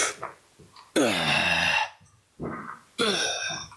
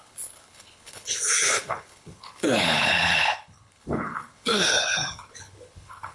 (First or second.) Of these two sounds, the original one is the first